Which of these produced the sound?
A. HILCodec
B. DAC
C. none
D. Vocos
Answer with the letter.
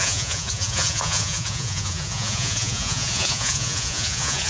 D